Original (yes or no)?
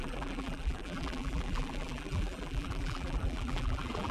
no